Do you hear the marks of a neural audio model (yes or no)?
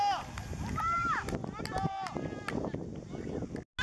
no